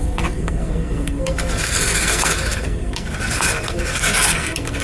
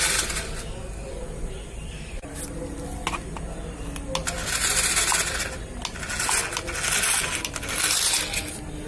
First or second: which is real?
second